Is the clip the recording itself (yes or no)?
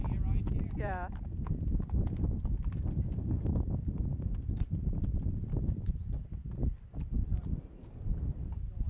no